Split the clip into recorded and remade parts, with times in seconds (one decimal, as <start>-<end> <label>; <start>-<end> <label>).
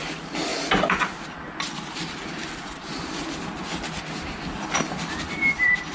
0.0-5.9 recorded